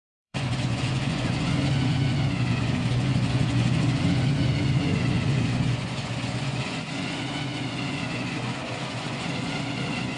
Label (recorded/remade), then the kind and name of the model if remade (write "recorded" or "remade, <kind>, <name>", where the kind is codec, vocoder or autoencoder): remade, vocoder, Vocos